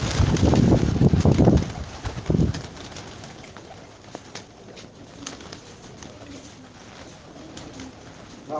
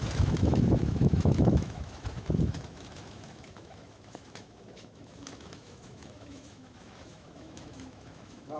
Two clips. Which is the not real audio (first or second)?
second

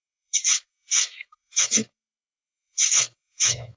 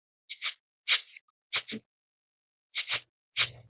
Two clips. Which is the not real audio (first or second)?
first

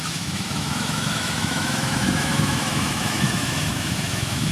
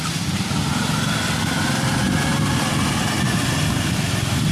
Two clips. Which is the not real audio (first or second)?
first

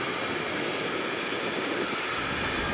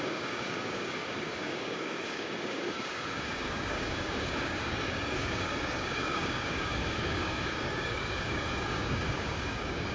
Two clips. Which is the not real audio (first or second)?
second